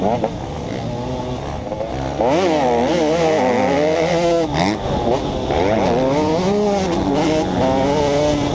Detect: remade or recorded recorded